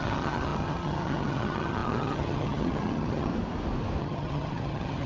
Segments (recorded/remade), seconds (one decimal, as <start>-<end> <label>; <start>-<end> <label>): 0.0-3.3 remade; 3.3-4.0 recorded; 4.0-5.1 remade